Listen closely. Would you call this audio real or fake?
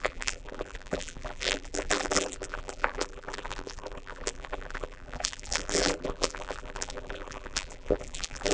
fake